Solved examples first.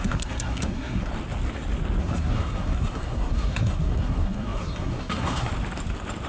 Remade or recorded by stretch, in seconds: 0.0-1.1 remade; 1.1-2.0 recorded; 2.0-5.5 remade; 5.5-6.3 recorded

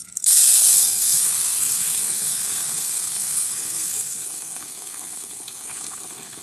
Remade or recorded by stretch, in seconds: 0.0-6.4 remade